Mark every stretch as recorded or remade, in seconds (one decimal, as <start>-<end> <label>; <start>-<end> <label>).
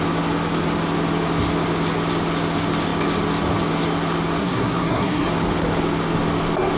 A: 0.0-4.4 recorded; 4.4-5.3 remade; 5.3-6.8 recorded